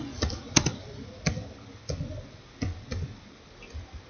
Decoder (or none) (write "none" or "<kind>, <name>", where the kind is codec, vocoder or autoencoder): none